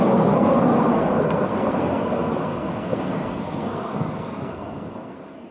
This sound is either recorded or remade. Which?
remade